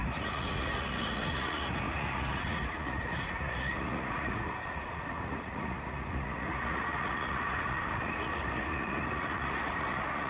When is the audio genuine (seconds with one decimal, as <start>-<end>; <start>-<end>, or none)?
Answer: none